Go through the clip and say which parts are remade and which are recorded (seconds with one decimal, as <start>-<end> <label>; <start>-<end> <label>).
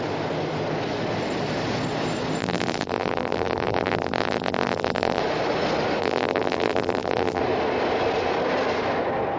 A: 0.0-2.4 recorded; 2.4-5.2 remade; 5.2-6.0 recorded; 6.0-7.4 remade; 7.4-9.4 recorded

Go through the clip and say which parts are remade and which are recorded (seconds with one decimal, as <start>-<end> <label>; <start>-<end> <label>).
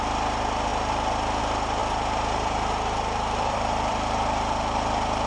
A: 0.0-1.8 recorded; 1.8-5.3 remade